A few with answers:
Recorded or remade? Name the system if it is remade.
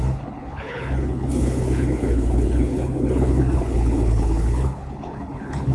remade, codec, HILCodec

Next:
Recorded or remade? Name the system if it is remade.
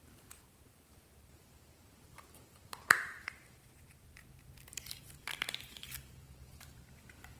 remade, vocoder, BigVGAN v2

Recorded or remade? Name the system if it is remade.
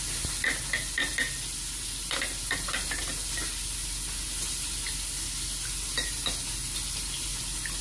recorded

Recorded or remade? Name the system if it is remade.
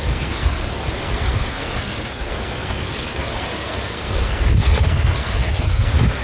remade, codec, SNAC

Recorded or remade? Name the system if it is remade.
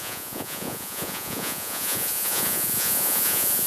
remade, vocoder, Vocos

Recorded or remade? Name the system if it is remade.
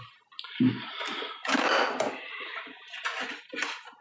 recorded